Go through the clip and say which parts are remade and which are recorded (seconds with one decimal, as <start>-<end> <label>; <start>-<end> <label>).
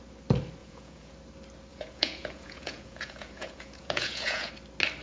0.0-0.6 recorded; 0.6-1.1 remade; 1.1-1.7 recorded; 1.7-4.5 remade; 4.5-5.0 recorded